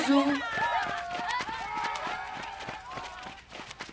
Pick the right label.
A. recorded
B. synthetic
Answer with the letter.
A